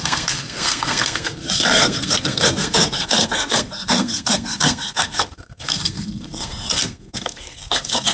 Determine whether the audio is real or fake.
fake